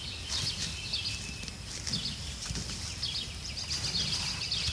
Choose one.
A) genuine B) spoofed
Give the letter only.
A